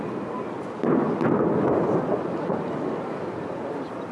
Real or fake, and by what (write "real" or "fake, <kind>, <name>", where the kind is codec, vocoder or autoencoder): real